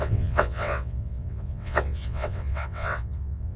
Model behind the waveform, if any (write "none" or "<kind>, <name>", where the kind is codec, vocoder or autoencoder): vocoder, WaveNeXt